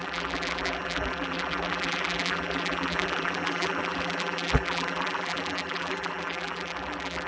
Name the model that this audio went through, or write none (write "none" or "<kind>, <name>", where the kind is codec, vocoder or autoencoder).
vocoder, BigVGAN v2